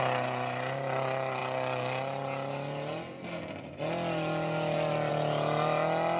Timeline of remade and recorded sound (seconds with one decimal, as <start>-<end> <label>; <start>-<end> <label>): 0.0-6.2 recorded